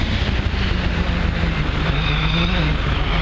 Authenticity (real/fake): real